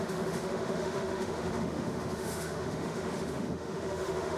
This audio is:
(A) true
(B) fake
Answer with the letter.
B